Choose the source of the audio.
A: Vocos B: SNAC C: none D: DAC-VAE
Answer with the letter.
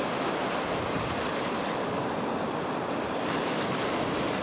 C